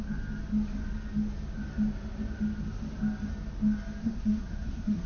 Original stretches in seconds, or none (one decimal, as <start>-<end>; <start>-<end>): 0.0-4.0